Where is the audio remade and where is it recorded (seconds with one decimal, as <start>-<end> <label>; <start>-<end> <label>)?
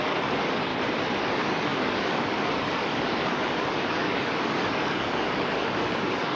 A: 0.0-0.7 remade; 0.7-1.2 recorded; 1.2-6.4 remade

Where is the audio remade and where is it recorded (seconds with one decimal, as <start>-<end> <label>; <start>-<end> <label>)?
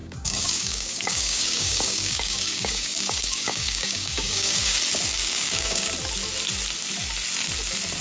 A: 0.0-4.8 remade; 4.8-5.2 recorded; 5.2-5.9 remade; 5.9-8.0 recorded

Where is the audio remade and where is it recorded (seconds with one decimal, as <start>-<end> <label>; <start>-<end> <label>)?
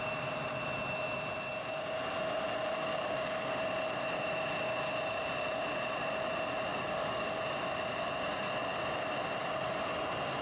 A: 0.0-2.9 recorded; 2.9-3.6 remade; 3.6-6.7 recorded; 6.7-7.4 remade; 7.4-10.4 recorded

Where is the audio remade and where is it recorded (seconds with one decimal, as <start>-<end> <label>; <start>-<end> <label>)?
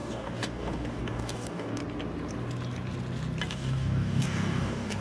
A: 0.0-1.8 remade; 1.8-3.5 recorded; 3.5-5.0 remade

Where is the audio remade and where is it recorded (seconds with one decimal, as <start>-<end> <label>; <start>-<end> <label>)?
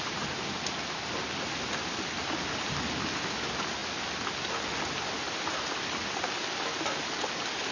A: 0.0-7.7 recorded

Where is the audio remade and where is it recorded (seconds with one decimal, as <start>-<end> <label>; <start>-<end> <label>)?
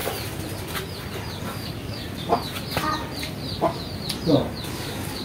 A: 0.0-1.4 recorded; 1.4-2.0 remade; 2.0-4.7 recorded; 4.7-5.2 remade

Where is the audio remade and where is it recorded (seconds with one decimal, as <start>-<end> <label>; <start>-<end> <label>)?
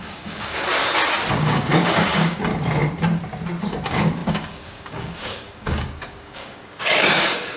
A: 0.0-0.7 remade; 0.7-1.3 recorded; 1.3-2.5 remade; 2.5-3.6 recorded; 3.6-7.6 remade